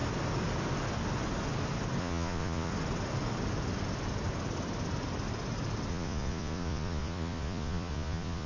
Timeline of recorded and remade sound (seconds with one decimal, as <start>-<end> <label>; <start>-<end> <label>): 0.0-2.0 recorded; 2.0-2.7 remade; 2.7-5.9 recorded; 5.9-8.5 remade